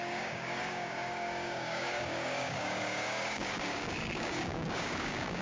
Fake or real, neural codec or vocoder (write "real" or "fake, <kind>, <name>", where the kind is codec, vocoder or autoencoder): fake, codec, DAC